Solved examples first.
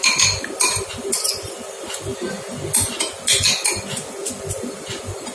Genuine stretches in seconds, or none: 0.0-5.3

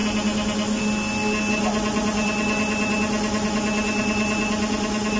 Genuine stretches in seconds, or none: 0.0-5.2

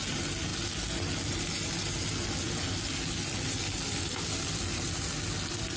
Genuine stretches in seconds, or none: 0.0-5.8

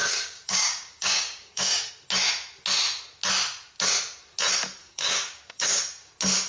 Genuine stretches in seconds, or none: 1.9-4.8; 5.8-6.5